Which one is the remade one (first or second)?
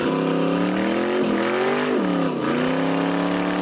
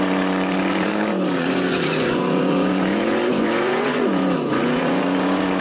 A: second